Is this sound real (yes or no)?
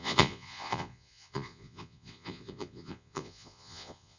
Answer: no